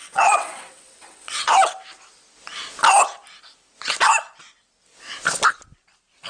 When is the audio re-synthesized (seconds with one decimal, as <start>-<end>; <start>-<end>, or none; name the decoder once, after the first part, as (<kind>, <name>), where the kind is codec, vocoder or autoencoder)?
0.0-1.7 (vocoder, WaveNeXt)